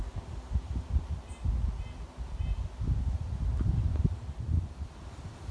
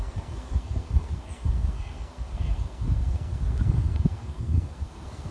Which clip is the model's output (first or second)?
second